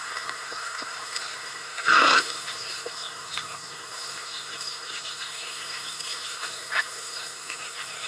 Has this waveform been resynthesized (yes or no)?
yes